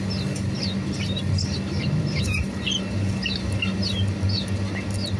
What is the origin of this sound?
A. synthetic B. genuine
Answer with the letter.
B